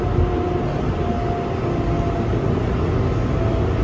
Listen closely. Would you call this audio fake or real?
real